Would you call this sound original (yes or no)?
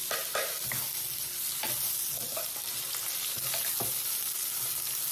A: yes